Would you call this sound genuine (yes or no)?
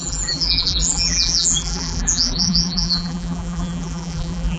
no